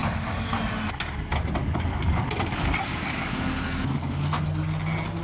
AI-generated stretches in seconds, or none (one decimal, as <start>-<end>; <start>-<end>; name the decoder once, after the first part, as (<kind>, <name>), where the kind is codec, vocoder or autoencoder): 1.6-4.4 (codec, DAC)

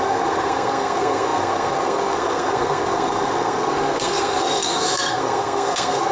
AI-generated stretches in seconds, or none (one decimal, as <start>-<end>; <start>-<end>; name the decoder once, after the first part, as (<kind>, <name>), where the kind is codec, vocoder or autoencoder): 0.0-6.1 (codec, SNAC)

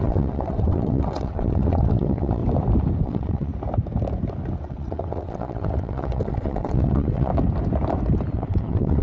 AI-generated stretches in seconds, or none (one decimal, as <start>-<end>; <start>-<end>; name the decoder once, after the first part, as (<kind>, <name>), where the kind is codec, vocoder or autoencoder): 0.0-2.4 (vocoder, WaveNeXt); 3.0-3.5; 4.6-7.3; 8.3-9.0